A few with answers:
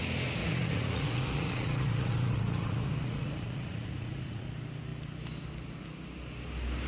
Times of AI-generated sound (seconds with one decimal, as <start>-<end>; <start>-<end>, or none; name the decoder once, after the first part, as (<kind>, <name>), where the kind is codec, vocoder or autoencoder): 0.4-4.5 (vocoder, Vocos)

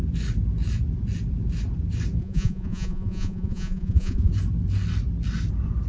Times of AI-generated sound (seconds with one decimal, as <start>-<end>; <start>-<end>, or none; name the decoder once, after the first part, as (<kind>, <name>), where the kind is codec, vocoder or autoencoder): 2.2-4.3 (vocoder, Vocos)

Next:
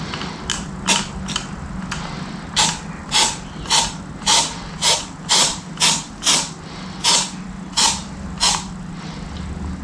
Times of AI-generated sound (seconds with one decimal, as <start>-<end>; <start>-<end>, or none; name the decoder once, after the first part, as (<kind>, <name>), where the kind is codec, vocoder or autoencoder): none